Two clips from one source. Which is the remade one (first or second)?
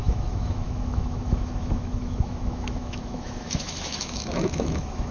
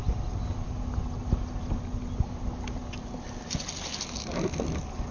first